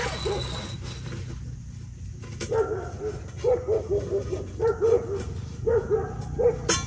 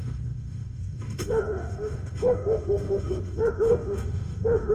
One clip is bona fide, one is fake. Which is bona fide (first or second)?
first